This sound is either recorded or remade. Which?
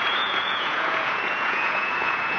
remade